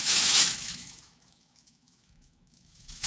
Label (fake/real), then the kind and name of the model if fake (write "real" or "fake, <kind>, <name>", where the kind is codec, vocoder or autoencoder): fake, autoencoder, DAC-VAE